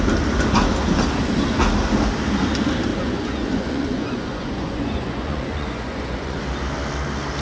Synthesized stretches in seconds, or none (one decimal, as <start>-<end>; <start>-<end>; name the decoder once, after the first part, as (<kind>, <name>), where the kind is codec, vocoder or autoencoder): 2.9-6.4 (vocoder, Vocos)